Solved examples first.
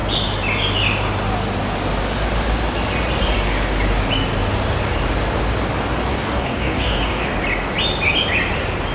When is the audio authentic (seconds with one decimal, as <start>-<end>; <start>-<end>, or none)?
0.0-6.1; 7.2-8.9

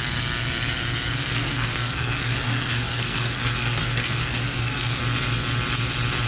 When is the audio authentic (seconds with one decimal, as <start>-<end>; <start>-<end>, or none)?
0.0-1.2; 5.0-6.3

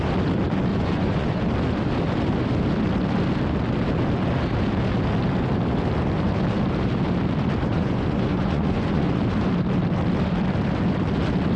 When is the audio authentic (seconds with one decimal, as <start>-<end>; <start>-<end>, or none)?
0.0-0.7; 1.4-7.7; 9.2-11.6

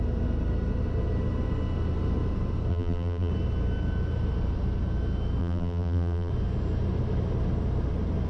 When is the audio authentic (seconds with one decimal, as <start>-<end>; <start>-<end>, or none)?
0.0-2.7; 3.3-5.4; 6.3-8.3

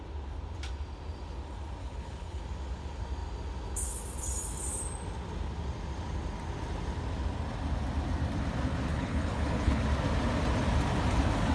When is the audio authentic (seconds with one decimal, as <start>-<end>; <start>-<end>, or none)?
0.0-1.8; 2.4-8.9; 9.8-11.5

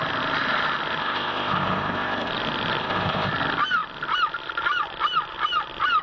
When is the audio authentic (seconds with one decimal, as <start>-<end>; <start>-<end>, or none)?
0.0-1.0; 2.3-2.8; 3.3-6.0

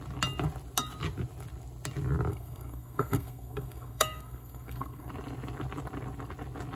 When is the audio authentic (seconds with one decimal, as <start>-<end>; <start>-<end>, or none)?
0.0-2.3; 5.1-6.8

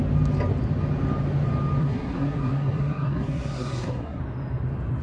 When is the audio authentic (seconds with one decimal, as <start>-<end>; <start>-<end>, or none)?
0.0-1.8; 4.2-5.0